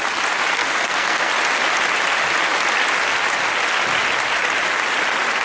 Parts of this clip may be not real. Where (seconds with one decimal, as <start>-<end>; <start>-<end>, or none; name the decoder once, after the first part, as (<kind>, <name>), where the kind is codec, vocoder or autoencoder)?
0.5-1.3 (codec, SNAC)